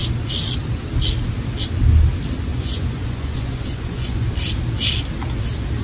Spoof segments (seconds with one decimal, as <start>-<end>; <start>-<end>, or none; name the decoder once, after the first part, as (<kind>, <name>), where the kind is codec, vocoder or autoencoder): 2.5-4.3 (vocoder, Vocos)